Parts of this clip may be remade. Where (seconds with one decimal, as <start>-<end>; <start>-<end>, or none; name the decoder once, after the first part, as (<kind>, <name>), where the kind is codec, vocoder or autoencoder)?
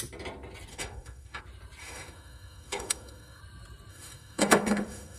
0.7-1.4 (autoencoder, DAC-VAE); 1.8-3.4; 3.9-5.2